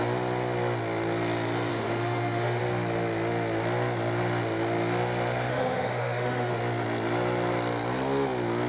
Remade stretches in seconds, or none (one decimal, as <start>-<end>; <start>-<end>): 1.7-2.6; 5.5-6.6